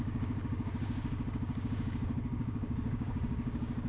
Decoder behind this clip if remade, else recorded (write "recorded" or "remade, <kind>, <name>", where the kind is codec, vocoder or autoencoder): remade, codec, DAC